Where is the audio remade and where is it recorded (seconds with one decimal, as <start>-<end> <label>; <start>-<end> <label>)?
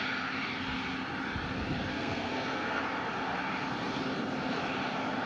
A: 0.0-1.9 recorded; 1.9-2.8 remade; 2.8-5.3 recorded